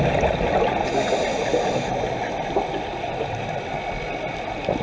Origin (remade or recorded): recorded